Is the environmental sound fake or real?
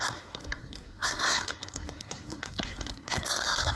fake